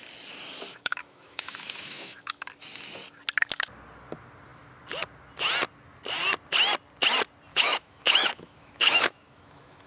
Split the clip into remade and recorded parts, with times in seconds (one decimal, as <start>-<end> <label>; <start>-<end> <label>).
0.0-0.7 recorded; 0.7-2.5 remade; 2.5-7.5 recorded; 7.5-9.9 remade